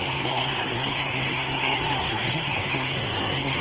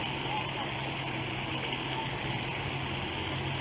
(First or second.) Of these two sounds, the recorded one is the second